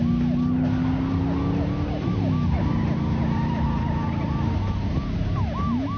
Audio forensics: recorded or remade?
recorded